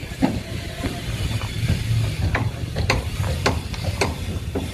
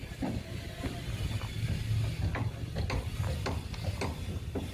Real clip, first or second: second